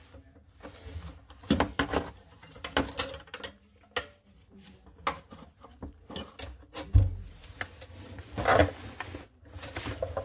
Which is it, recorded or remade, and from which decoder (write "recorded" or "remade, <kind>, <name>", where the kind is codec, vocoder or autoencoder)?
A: recorded